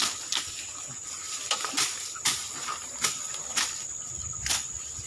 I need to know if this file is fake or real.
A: real